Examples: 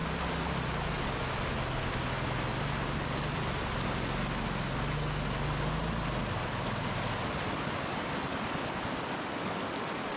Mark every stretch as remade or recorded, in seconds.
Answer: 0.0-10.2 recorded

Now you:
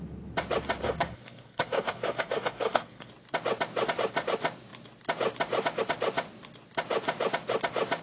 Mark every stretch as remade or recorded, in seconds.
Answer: 0.0-0.8 recorded; 0.8-3.1 remade; 3.1-8.0 recorded

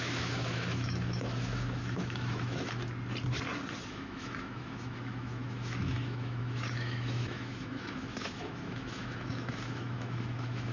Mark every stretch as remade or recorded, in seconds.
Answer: 0.0-2.8 remade; 2.8-3.9 recorded; 3.9-10.7 remade

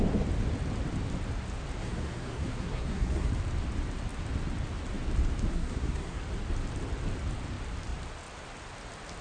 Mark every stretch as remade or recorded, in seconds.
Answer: 0.0-1.8 recorded; 1.8-3.3 remade; 3.3-5.5 recorded; 5.5-6.2 remade; 6.2-9.2 recorded

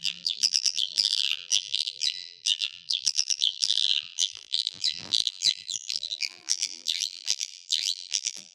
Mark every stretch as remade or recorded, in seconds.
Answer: 0.0-8.5 remade

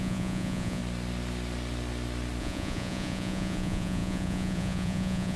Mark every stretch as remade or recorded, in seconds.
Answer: 0.0-0.8 remade; 0.8-2.4 recorded; 2.4-5.4 remade

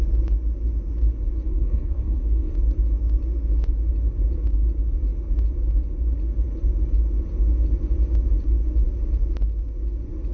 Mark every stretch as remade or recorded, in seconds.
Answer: 0.0-1.5 recorded; 1.5-2.5 remade; 2.5-10.3 recorded

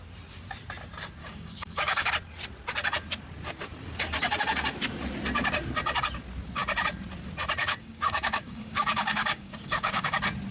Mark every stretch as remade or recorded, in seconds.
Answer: 0.0-1.2 recorded; 1.2-2.1 remade; 2.1-7.6 recorded; 7.6-10.1 remade; 10.1-10.5 recorded